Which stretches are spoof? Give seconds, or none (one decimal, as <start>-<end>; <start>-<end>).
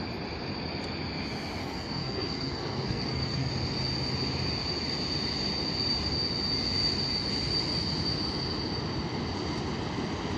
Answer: 1.6-3.5